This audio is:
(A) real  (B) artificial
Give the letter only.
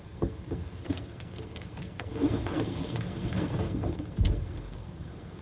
B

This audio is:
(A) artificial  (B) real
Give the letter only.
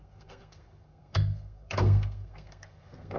A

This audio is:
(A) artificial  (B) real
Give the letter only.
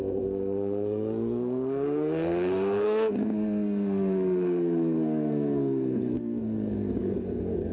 A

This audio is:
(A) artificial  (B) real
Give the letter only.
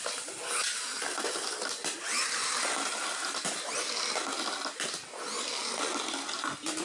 B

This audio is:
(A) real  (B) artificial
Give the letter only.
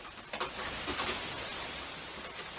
A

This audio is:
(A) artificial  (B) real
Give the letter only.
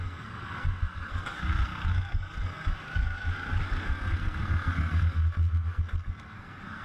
A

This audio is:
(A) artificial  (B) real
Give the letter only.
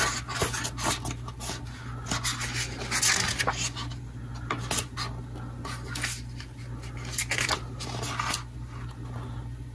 B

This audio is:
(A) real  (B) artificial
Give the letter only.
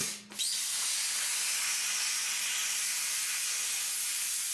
A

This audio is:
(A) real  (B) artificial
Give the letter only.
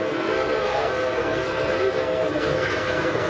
B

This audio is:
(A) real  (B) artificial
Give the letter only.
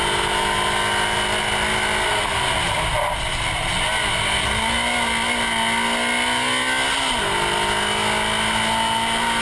A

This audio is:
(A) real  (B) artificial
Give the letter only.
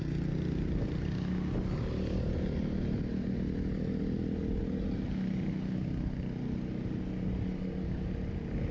A